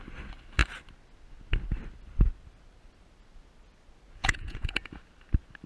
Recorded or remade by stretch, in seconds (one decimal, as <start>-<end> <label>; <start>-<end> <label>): 0.0-4.2 recorded; 4.2-4.9 remade; 4.9-5.7 recorded